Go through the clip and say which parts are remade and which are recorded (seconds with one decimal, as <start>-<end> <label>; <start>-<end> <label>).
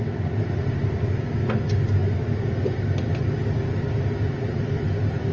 0.0-5.3 recorded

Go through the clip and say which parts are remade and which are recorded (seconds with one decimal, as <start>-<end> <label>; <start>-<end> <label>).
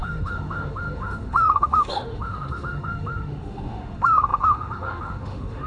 0.0-5.7 remade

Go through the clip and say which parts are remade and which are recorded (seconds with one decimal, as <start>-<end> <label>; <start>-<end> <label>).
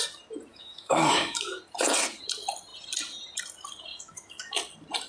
0.0-0.5 recorded; 0.5-1.6 remade; 1.6-3.9 recorded; 3.9-4.6 remade; 4.6-5.1 recorded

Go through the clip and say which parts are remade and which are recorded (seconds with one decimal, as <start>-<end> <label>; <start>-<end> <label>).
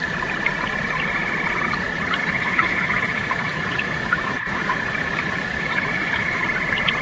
0.0-2.2 recorded; 2.2-6.4 remade; 6.4-7.0 recorded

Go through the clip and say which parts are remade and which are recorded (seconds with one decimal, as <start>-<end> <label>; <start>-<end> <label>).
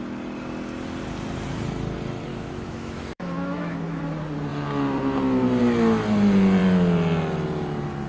0.0-2.3 recorded; 2.3-4.0 remade; 4.0-8.1 recorded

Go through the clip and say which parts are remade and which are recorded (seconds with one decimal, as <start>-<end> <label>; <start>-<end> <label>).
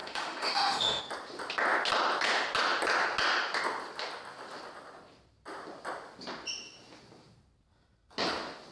0.0-1.0 remade; 1.0-8.7 recorded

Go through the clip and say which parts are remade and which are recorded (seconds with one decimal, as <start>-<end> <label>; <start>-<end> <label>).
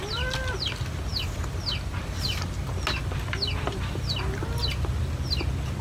0.0-5.8 recorded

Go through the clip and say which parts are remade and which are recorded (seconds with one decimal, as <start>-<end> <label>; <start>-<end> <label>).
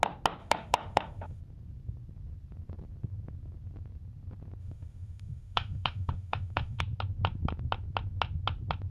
0.0-0.4 recorded; 0.4-1.4 remade; 1.4-4.6 recorded; 4.6-6.8 remade; 6.8-8.9 recorded